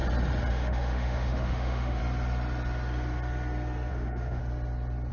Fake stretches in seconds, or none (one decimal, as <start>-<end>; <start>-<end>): 0.5-2.0; 3.9-4.4